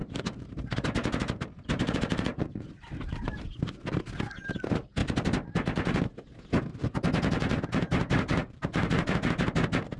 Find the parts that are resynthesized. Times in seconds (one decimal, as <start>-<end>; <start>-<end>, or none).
0.0-4.1; 5.0-6.0; 8.3-8.9